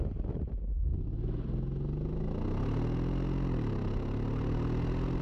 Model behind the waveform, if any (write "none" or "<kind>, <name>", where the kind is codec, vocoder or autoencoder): none